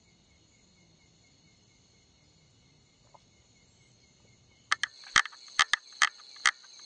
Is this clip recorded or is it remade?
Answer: recorded